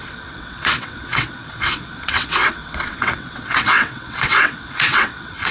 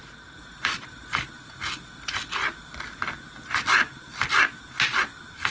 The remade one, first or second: first